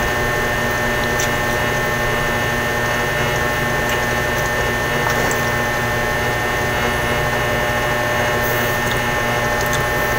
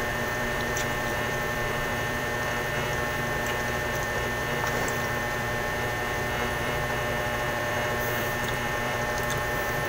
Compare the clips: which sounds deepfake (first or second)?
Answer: second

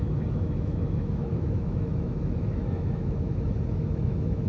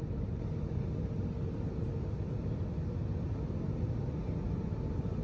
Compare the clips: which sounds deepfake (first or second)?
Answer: first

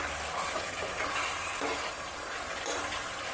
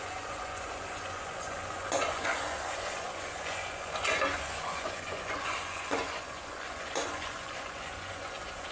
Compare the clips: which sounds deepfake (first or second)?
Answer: second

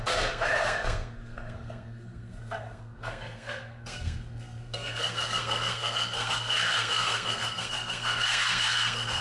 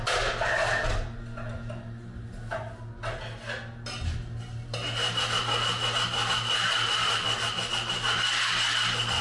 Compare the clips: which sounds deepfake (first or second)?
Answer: first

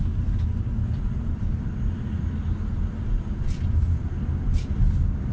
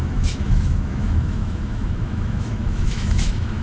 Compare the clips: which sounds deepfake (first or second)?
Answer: second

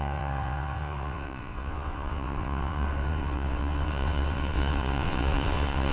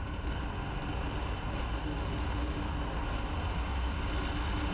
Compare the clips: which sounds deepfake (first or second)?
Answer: first